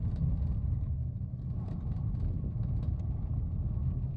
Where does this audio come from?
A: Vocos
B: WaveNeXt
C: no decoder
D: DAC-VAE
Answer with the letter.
C